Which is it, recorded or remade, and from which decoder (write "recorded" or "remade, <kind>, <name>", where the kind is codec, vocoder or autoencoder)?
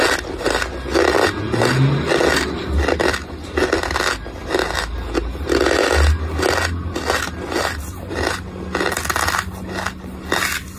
recorded